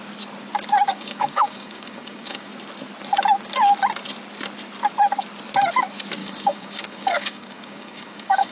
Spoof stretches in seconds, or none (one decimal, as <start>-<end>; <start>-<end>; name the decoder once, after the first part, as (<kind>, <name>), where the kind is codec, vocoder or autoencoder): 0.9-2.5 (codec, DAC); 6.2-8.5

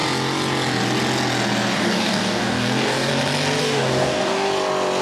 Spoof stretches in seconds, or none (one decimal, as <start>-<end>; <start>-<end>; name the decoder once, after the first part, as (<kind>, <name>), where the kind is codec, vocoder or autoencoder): 1.7-3.1 (codec, DAC); 3.6-4.5

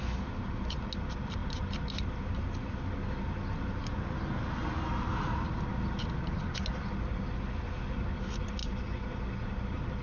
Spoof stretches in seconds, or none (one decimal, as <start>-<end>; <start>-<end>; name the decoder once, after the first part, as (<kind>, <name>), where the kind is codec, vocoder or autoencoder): none

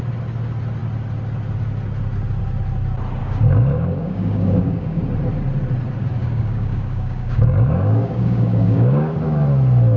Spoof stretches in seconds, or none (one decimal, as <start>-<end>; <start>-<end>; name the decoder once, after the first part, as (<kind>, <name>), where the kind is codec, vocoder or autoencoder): 3.2-5.0 (codec, DAC); 6.2-9.1